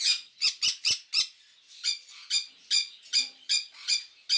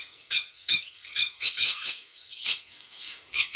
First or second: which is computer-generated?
second